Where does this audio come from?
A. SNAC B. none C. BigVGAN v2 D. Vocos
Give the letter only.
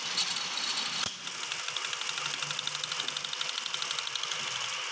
B